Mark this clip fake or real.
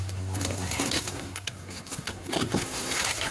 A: fake